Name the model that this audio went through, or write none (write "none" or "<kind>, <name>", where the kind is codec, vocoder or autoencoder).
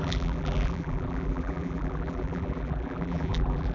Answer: vocoder, BigVGAN v2